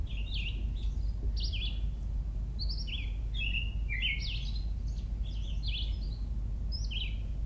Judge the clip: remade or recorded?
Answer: recorded